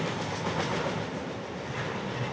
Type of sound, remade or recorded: recorded